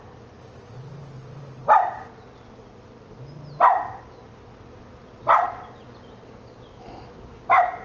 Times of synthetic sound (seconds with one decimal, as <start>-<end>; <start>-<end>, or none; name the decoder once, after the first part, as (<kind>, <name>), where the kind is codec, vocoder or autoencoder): none